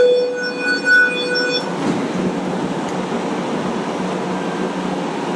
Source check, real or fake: real